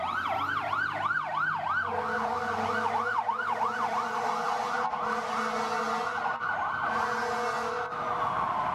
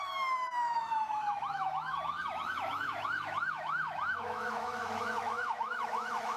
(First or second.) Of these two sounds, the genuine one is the first